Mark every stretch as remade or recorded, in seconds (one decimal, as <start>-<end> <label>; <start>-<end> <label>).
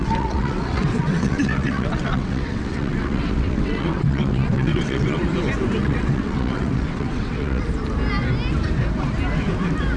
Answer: 0.0-5.2 remade; 5.2-5.8 recorded; 5.8-7.6 remade; 7.6-10.0 recorded